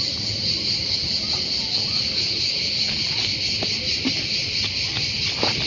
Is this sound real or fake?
real